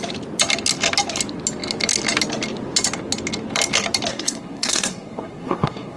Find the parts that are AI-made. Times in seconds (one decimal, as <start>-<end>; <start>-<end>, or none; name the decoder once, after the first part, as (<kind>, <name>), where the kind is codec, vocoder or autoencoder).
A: 4.1-6.0 (codec, SNAC)